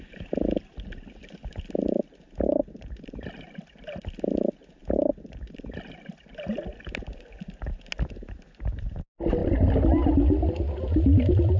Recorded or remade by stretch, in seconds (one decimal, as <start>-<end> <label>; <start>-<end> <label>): 0.0-11.6 recorded